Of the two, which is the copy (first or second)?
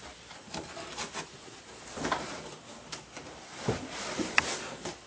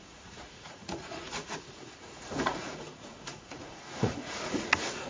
second